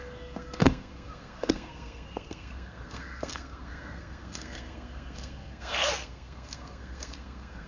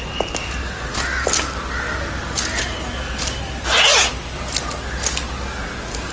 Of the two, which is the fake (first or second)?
first